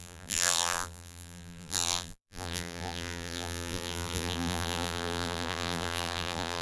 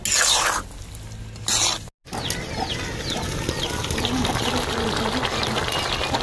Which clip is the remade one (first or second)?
first